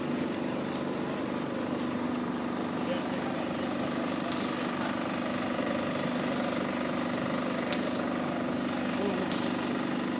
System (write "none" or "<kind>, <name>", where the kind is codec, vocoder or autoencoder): none